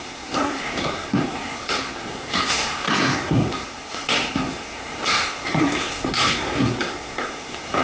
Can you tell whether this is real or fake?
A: fake